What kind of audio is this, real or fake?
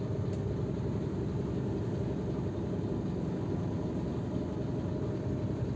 real